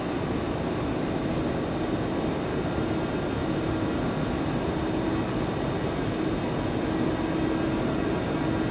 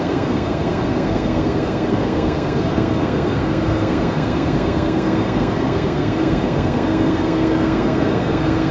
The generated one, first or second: second